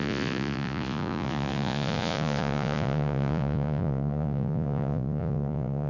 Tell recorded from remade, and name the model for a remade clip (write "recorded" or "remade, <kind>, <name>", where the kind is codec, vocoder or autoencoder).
remade, vocoder, Vocos